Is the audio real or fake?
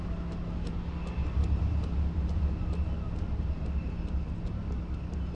real